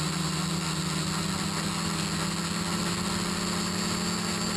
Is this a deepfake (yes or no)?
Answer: no